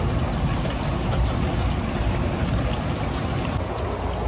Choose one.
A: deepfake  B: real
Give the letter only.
B